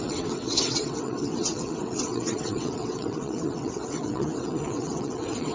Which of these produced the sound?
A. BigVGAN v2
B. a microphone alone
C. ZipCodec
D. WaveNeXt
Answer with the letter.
D